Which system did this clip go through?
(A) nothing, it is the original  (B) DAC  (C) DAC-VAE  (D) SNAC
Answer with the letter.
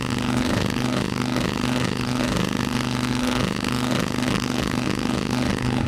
C